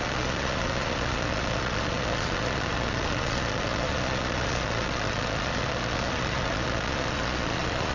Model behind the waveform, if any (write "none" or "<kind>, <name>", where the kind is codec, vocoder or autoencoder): vocoder, Vocos